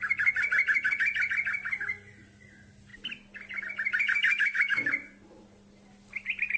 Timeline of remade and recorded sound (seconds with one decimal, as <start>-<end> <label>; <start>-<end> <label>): 0.0-4.3 recorded; 4.3-4.9 remade; 4.9-6.6 recorded